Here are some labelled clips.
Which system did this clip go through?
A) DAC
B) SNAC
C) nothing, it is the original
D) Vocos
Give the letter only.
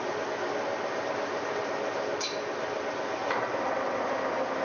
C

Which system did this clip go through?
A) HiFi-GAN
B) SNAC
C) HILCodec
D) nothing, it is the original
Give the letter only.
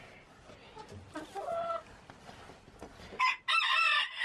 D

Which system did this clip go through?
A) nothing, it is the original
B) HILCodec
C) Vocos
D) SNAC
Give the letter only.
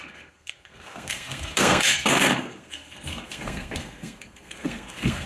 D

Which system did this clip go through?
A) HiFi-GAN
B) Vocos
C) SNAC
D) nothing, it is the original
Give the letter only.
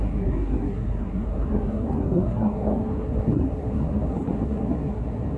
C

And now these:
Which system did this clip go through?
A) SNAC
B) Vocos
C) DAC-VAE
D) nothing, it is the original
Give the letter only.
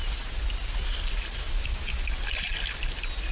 D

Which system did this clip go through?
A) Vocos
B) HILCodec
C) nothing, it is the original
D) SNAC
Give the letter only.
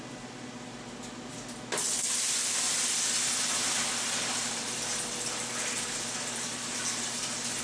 C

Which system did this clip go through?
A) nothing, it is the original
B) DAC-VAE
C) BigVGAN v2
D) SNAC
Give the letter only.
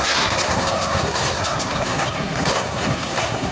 D